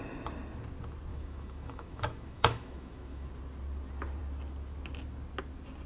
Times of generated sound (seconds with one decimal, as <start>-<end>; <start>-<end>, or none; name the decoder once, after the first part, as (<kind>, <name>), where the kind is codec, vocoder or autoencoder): 1.1-3.3 (autoencoder, DAC-VAE)